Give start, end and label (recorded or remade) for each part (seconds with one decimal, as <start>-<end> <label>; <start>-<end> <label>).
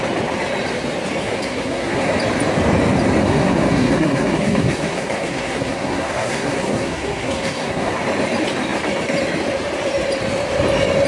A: 0.0-1.2 recorded; 1.2-2.1 remade; 2.1-3.2 recorded; 3.2-7.9 remade; 7.9-11.1 recorded